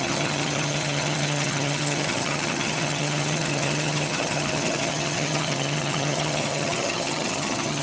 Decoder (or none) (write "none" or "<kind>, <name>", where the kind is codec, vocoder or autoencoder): vocoder, HiFi-GAN